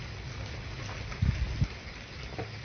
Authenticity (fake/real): real